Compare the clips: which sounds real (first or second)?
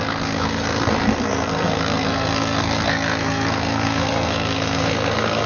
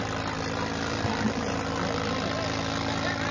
second